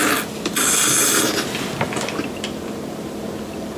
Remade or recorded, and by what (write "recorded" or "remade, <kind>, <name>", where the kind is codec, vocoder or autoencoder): recorded